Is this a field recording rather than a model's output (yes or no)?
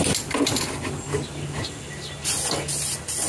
yes